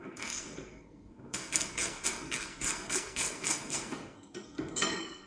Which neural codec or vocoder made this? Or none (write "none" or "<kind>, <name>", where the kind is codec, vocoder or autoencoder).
codec, SNAC